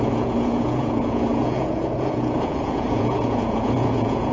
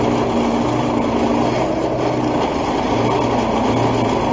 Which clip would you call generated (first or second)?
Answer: first